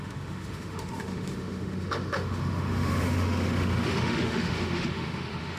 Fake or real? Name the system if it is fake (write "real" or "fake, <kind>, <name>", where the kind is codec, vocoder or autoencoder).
fake, autoencoder, DAC-VAE